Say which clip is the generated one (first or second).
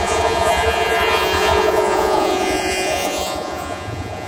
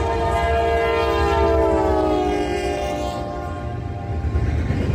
first